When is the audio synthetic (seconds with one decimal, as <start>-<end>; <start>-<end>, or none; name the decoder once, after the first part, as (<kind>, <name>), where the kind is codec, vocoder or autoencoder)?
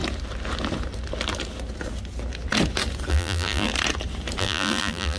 3.1-3.7 (vocoder, BigVGAN v2); 4.4-5.2